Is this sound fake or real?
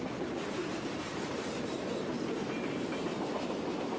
real